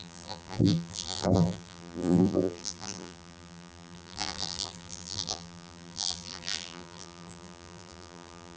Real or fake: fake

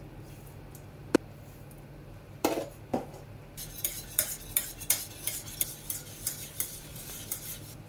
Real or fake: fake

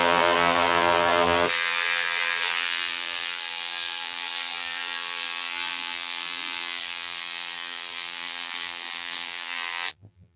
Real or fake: fake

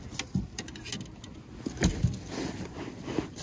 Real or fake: real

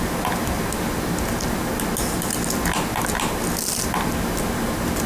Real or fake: real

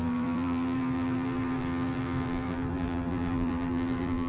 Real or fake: fake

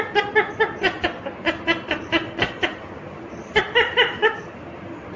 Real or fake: fake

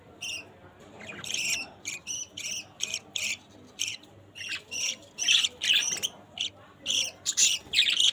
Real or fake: fake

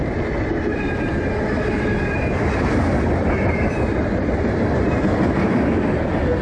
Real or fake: real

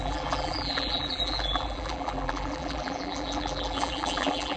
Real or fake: fake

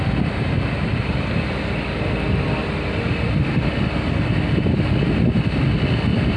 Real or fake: real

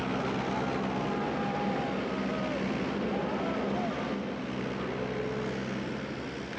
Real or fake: real